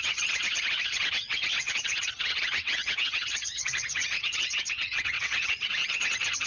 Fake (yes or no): yes